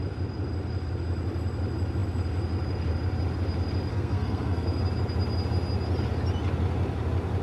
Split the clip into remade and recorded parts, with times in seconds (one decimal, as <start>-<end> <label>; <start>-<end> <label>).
0.0-3.9 recorded; 3.9-4.8 remade; 4.8-7.4 recorded